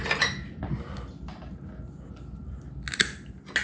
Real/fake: real